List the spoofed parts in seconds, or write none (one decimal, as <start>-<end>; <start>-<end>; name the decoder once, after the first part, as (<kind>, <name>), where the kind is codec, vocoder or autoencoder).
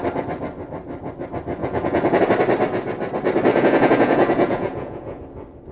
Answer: 1.6-2.2 (vocoder, Vocos); 3.5-5.2